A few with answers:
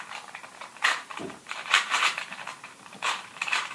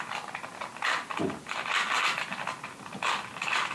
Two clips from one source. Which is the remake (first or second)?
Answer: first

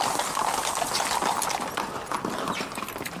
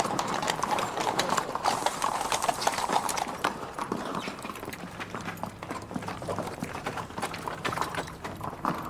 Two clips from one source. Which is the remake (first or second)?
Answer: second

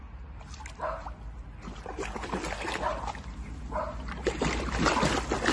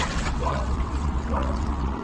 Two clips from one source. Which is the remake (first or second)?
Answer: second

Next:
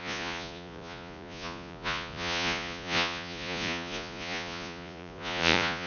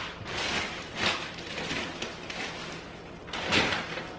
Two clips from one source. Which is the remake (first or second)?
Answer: first